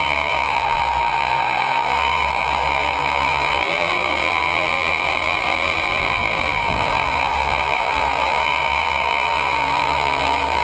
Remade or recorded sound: remade